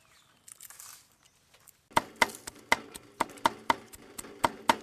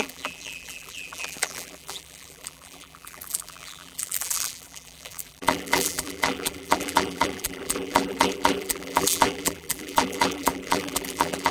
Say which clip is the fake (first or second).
second